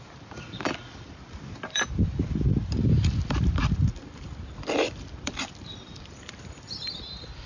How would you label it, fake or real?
fake